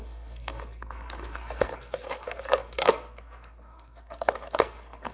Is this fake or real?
fake